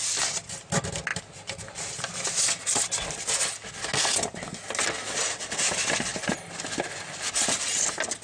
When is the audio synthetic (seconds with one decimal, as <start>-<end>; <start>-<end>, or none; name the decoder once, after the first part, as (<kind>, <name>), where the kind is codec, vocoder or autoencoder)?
none